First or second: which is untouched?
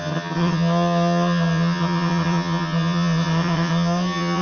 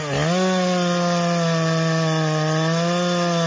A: second